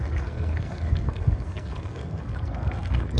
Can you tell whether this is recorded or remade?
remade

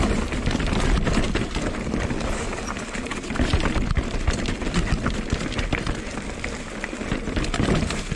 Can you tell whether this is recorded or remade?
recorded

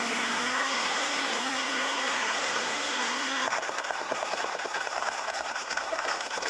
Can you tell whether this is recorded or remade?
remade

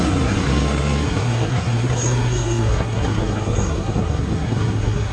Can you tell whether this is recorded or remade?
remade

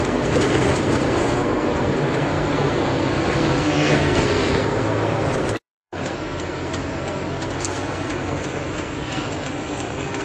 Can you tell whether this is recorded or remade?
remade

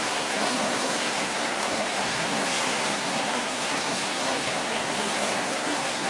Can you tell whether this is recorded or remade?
remade